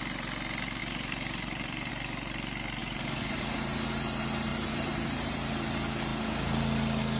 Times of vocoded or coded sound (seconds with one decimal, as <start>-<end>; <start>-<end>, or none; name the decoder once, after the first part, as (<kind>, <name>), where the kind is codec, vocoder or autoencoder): 0.8-1.9 (vocoder, BigVGAN v2); 2.8-3.4; 4.5-5.3